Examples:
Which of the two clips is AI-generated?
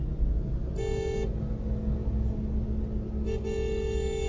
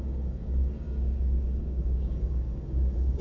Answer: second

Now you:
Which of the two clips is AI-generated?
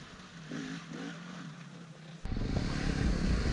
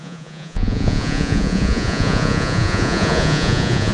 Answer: second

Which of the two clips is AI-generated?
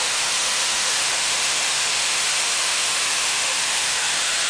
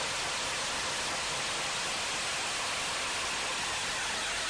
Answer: first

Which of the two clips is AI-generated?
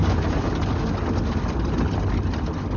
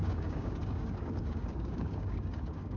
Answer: second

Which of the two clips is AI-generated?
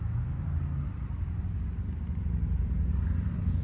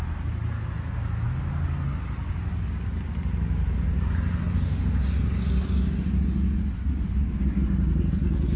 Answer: first